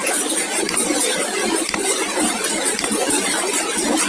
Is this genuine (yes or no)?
no